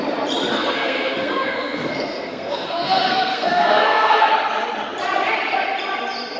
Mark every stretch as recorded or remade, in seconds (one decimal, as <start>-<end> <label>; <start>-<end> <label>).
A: 0.0-0.5 recorded; 0.5-4.3 remade; 4.3-6.4 recorded